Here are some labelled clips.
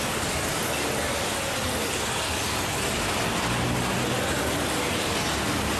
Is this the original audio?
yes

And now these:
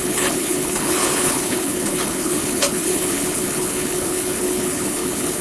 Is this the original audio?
no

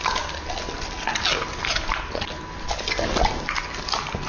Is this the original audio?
yes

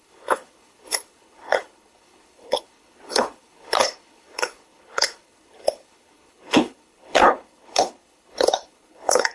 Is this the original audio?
no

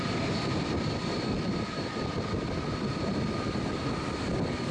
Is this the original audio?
yes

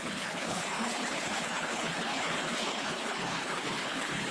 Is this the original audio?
no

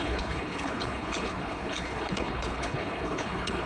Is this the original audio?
no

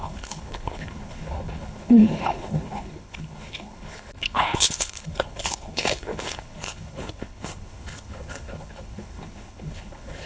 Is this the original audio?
no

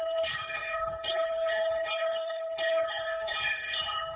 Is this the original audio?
no